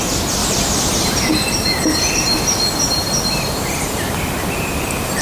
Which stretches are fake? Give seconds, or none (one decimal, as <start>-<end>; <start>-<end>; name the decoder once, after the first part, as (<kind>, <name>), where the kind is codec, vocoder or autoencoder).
0.4-1.3 (vocoder, BigVGAN v2)